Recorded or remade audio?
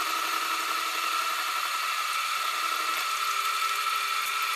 recorded